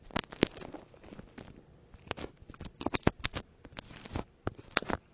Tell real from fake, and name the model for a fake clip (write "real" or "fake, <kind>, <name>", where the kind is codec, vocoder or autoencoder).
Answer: real